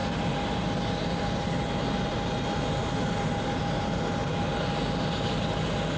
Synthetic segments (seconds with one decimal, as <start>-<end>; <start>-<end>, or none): none